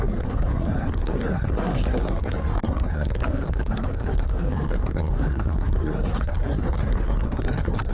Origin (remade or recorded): remade